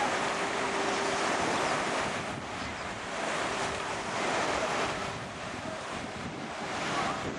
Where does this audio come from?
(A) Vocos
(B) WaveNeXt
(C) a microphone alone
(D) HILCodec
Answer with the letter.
C